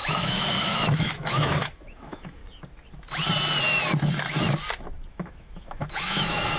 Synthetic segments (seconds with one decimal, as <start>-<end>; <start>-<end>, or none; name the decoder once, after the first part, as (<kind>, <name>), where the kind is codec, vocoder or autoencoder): 0.0-2.4 (autoencoder, DAC-VAE); 5.1-6.6